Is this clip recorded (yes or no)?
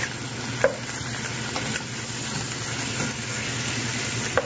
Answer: yes